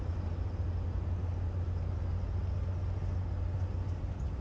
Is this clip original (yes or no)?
yes